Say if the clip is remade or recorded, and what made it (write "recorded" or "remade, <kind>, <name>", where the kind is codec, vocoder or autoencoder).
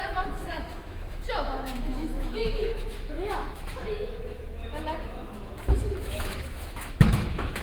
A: remade, autoencoder, DAC-VAE